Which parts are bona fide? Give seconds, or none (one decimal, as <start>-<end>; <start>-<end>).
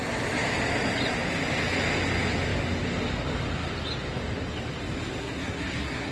0.0-5.2